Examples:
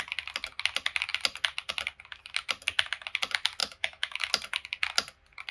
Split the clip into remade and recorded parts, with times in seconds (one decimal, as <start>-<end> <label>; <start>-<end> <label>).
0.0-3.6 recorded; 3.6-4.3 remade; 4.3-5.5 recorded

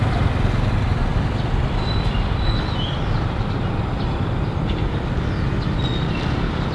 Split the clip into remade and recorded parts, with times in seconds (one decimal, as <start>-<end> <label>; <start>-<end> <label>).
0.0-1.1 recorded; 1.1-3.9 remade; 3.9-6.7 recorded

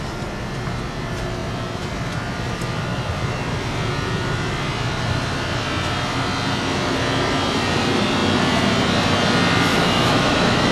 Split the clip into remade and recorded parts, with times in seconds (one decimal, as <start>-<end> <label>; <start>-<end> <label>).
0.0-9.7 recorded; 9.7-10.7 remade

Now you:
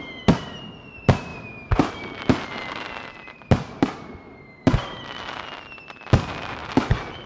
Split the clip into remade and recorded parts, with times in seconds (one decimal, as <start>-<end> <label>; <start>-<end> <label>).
0.0-7.3 recorded